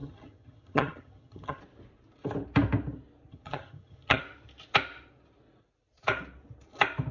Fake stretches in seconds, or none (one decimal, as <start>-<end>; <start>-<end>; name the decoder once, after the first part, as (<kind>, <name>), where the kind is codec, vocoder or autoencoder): 0.0-1.6 (vocoder, HiFi-GAN); 3.3-4.2